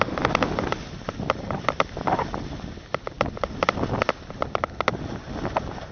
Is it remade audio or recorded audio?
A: recorded